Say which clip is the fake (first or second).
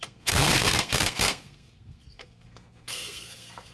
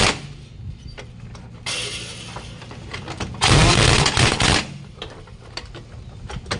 first